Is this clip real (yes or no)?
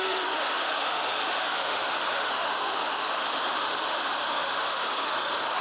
no